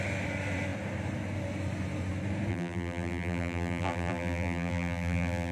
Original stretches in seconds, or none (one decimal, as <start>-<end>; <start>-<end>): 0.0-2.5